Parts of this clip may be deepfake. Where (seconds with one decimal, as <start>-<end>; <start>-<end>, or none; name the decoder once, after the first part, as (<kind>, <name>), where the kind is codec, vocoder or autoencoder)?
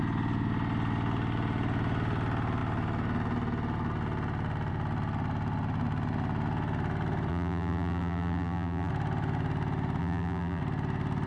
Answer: 7.3-8.9 (vocoder, BigVGAN v2); 10.0-10.6